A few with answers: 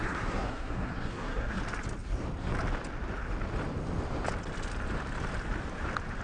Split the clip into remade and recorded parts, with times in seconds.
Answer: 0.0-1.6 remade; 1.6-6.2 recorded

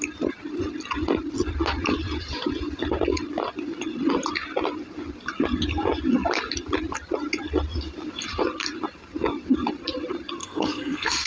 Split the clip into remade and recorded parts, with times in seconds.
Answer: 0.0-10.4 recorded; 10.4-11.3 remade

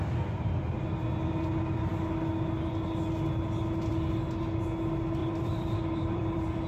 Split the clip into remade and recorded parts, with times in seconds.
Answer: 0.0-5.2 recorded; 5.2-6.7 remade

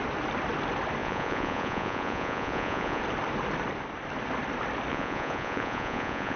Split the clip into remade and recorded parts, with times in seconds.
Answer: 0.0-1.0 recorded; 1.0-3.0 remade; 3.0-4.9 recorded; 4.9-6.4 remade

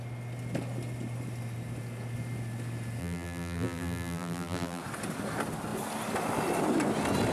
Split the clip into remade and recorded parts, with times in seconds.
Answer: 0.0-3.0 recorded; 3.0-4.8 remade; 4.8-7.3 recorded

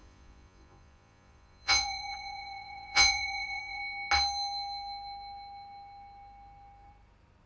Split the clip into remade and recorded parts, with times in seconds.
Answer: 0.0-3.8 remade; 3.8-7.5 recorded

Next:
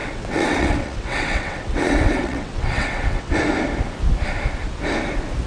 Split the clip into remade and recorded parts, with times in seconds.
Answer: 0.0-3.3 remade; 3.3-5.5 recorded

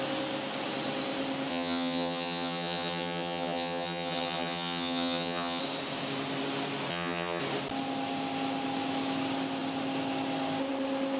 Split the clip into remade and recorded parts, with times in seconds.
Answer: 0.0-1.5 recorded; 1.5-5.6 remade; 5.6-6.9 recorded; 6.9-7.4 remade; 7.4-11.2 recorded